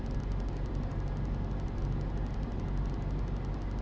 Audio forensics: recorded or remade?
recorded